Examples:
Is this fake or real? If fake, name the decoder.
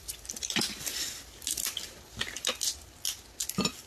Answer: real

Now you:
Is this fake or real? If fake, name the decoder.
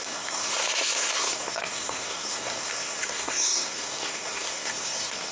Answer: fake, codec, SNAC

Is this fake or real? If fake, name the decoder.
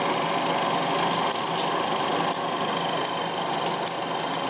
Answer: real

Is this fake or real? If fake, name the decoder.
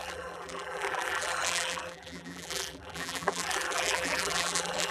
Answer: fake, vocoder, BigVGAN v2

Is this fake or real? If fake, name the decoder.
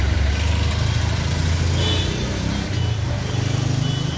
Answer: real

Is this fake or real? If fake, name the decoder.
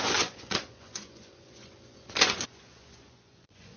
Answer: fake, vocoder, Vocos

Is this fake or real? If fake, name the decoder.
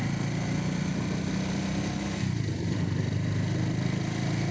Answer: real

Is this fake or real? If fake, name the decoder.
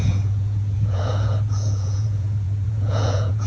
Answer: fake, vocoder, Vocos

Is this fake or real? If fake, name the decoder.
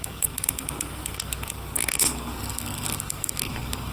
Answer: fake, codec, SNAC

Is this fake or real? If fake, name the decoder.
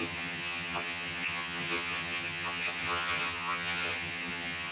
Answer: fake, vocoder, HiFi-GAN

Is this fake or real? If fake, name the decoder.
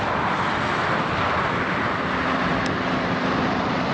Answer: real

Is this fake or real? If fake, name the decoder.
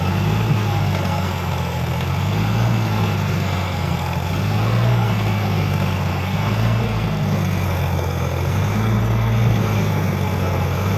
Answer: fake, codec, SNAC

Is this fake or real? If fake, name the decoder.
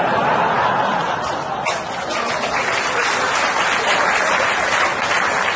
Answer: real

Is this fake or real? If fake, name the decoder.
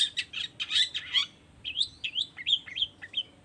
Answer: real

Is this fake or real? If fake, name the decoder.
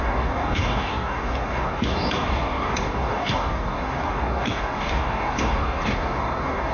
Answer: fake, codec, DAC